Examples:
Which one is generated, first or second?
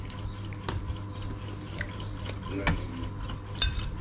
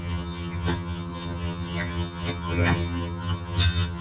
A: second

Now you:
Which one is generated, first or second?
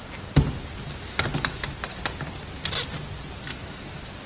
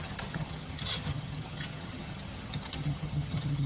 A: second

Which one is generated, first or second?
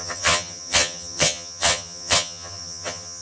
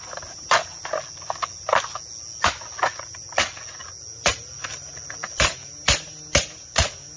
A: first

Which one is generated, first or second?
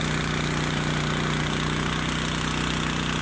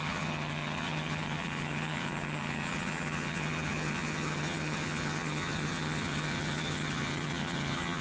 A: second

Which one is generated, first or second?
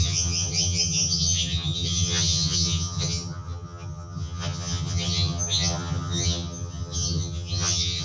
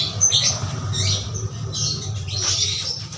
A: first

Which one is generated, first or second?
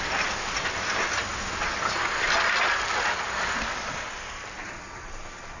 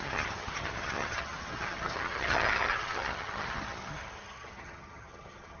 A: second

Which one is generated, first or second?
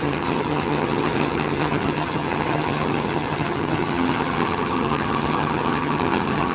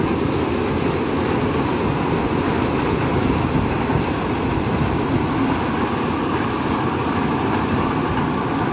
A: first